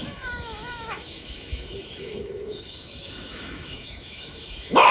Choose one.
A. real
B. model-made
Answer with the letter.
B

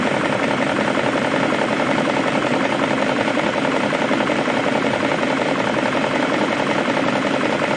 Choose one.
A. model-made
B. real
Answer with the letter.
B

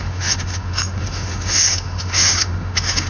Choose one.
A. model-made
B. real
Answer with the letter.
A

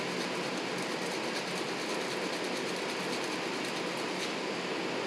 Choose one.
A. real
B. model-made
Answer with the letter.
A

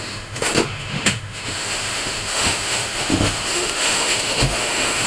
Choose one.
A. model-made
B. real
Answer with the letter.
A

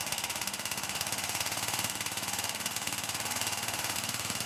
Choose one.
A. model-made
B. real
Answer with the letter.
A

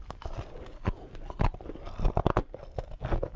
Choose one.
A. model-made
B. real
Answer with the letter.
B